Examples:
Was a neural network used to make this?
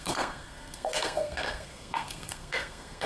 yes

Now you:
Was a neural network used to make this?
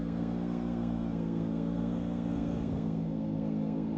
yes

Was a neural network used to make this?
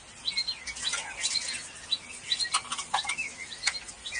no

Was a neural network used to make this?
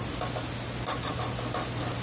no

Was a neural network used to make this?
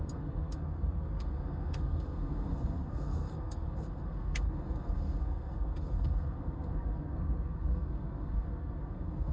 yes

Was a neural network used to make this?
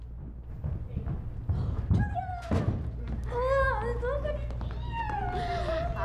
no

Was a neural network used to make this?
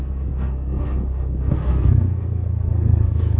yes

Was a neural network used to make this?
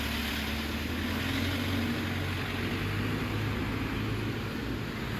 no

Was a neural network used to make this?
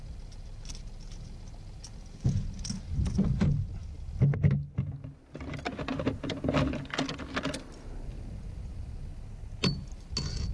no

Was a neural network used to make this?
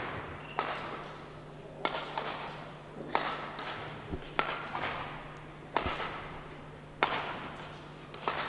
no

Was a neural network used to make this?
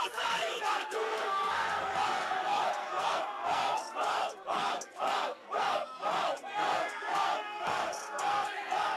yes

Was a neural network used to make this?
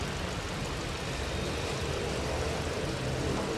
no